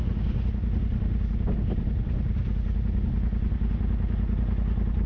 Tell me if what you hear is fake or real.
real